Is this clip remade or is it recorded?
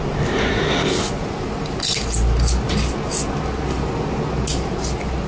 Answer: recorded